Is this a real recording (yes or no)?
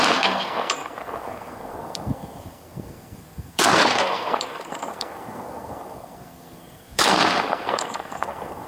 no